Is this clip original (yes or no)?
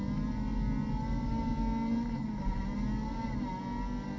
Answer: yes